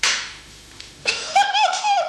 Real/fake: fake